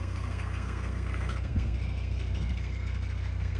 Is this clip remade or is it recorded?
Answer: remade